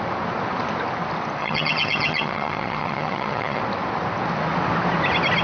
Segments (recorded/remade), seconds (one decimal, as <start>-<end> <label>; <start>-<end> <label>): 0.0-1.4 recorded; 1.4-3.6 remade; 3.6-5.4 recorded